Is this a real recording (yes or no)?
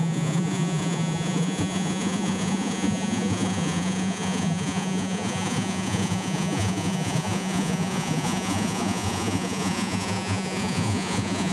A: no